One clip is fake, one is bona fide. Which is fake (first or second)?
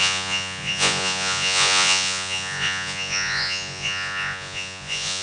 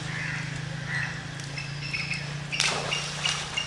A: first